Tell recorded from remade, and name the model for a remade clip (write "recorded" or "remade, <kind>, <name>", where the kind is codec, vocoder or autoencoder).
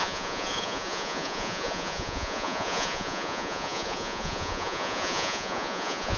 remade, vocoder, Vocos